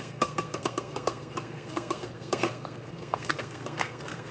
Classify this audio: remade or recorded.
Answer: remade